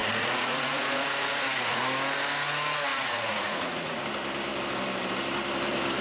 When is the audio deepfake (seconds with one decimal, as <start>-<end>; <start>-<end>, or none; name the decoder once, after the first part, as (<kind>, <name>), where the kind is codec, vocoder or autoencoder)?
0.0-1.8 (vocoder, Vocos); 2.9-4.0